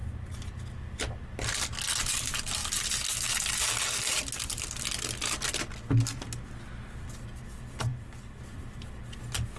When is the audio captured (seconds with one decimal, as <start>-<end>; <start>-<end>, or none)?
0.0-9.6